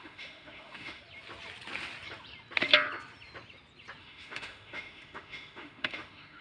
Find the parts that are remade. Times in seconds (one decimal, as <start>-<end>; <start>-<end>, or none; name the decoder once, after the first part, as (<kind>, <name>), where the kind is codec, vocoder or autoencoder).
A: 0.0-1.0 (autoencoder, DAC-VAE); 4.0-6.4